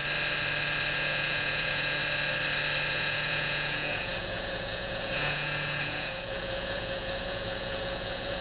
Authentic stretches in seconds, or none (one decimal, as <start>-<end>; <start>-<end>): 0.0-0.9; 2.0-2.9